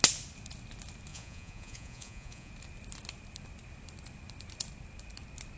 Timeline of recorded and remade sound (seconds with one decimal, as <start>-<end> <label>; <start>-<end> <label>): 0.0-1.1 recorded; 1.1-2.5 remade; 2.5-5.6 recorded